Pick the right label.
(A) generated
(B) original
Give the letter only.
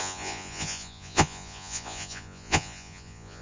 A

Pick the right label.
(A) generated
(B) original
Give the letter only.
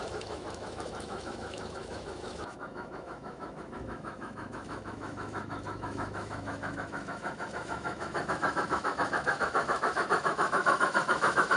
A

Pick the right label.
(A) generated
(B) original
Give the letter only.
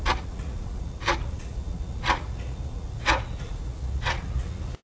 A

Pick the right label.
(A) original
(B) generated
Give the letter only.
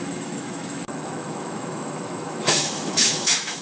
B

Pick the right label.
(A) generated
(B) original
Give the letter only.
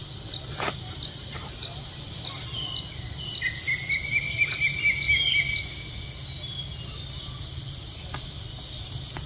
B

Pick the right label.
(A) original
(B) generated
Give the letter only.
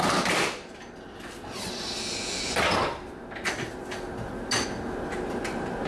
A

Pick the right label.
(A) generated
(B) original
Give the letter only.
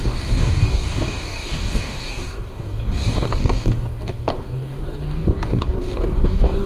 A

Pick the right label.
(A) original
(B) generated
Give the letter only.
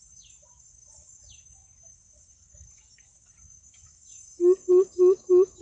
B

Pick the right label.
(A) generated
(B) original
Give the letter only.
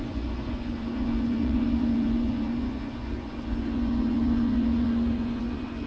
A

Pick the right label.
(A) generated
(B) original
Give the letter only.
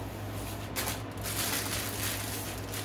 B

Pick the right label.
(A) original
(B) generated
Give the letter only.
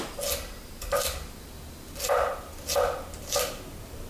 A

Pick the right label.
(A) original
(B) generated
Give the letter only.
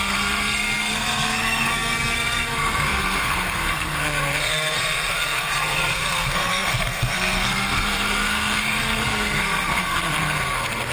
B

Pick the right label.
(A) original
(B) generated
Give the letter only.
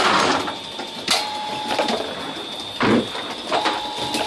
A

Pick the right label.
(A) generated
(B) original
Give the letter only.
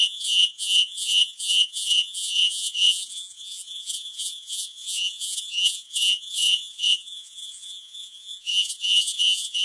A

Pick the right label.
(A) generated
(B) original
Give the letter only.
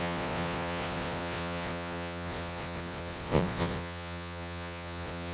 A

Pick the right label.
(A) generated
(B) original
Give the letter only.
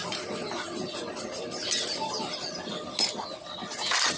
B